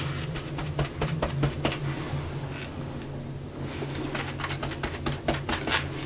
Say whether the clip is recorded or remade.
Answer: recorded